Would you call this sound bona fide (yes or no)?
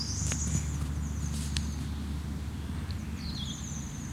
yes